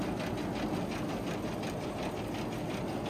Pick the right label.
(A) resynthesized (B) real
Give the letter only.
B